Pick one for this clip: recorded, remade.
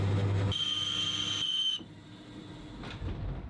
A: recorded